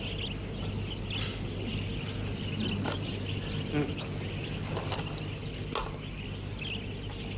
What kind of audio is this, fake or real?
real